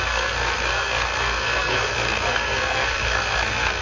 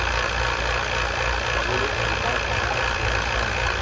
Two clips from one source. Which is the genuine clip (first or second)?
second